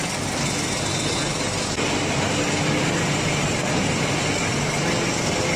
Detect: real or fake real